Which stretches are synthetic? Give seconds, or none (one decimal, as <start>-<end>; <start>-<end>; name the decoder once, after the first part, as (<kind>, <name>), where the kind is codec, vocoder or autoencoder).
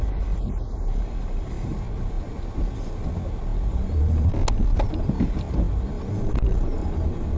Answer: 0.0-1.7 (vocoder, BigVGAN v2); 3.7-4.4; 6.3-7.4